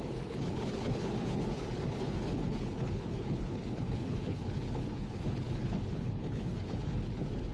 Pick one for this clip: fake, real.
fake